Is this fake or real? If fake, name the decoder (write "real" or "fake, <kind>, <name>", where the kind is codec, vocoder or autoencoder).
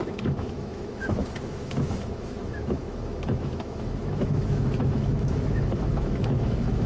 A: fake, autoencoder, DAC-VAE